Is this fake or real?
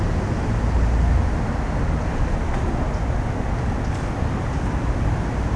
real